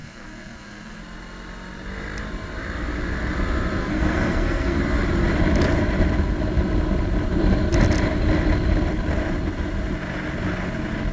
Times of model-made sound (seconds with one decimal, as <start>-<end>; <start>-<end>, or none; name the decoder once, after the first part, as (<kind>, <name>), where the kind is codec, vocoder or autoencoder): 0.0-1.0 (codec, SNAC); 3.8-4.8